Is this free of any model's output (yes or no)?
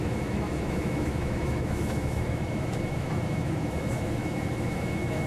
no